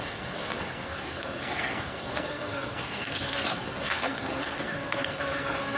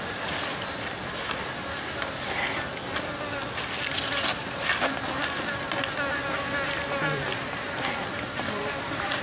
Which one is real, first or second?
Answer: second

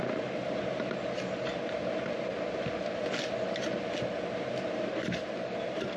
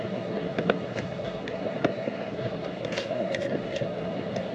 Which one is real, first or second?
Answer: first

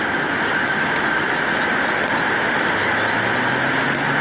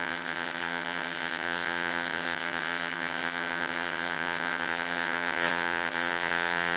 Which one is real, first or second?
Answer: first